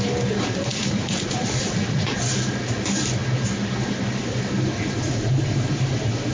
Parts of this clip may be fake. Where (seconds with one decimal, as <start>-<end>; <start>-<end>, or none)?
0.7-2.1